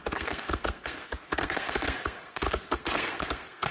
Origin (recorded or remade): remade